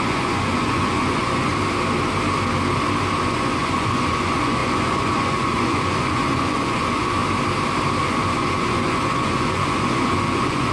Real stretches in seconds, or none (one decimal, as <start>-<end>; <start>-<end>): 1.5-3.2; 7.2-8.0